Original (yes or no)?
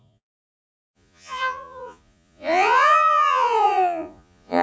no